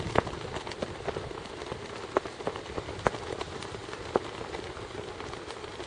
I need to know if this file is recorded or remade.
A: recorded